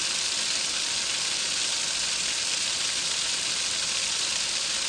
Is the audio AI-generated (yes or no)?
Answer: no